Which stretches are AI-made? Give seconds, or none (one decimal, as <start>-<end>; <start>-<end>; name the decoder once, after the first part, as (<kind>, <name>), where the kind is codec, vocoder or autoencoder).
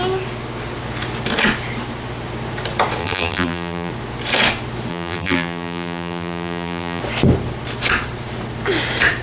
3.0-3.9 (vocoder, BigVGAN v2); 4.9-7.0